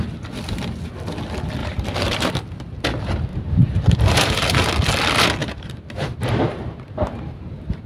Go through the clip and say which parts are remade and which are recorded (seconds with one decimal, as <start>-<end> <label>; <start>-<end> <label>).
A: 0.0-1.6 recorded; 1.6-2.3 remade; 2.3-3.3 recorded; 3.3-4.7 remade; 4.7-5.4 recorded; 5.4-7.9 remade